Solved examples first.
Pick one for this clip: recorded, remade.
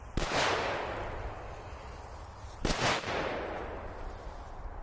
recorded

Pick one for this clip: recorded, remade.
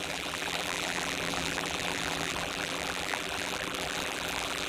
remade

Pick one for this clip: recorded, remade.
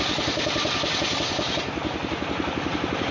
remade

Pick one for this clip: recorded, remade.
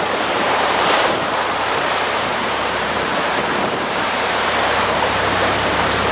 remade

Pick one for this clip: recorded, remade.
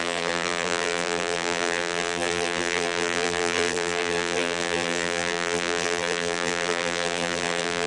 remade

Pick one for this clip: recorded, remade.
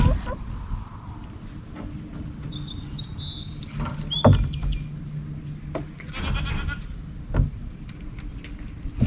recorded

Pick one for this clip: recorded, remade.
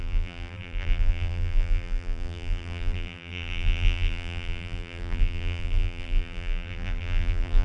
remade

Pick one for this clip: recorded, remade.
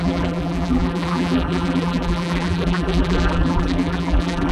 remade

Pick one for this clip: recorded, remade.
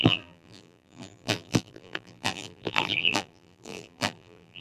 remade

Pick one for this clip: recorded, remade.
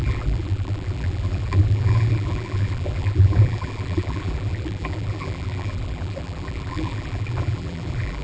remade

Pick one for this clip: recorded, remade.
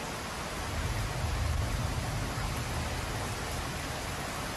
recorded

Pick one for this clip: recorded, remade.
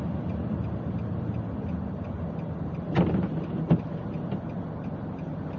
recorded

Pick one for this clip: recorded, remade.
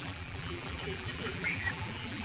remade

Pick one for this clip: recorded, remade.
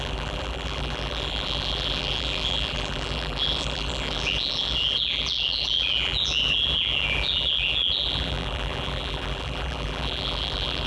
remade